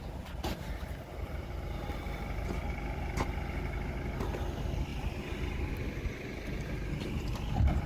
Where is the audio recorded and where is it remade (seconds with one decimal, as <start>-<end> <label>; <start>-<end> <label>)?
0.0-4.9 recorded; 4.9-5.7 remade; 5.7-7.9 recorded